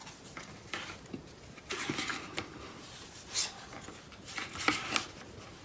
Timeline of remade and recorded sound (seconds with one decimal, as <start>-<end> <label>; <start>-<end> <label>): 0.0-5.6 recorded